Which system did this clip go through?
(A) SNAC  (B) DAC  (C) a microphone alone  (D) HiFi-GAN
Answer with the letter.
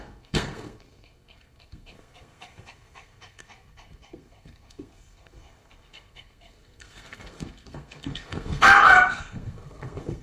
A